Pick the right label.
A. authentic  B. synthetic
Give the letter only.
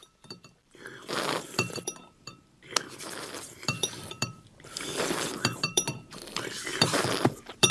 B